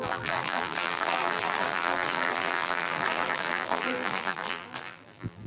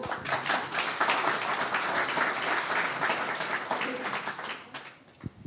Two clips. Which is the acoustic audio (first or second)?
second